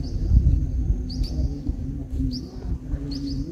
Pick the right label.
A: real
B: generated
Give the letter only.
A